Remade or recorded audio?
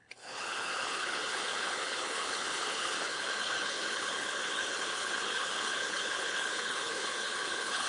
remade